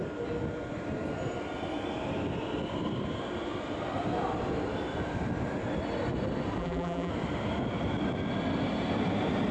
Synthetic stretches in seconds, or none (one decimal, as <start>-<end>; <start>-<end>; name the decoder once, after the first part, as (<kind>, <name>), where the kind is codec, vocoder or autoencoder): 6.6-7.1 (vocoder, BigVGAN v2)